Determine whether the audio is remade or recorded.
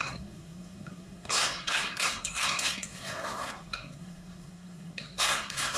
remade